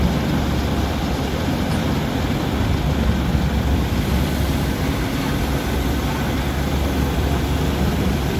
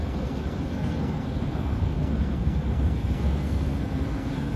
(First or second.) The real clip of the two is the first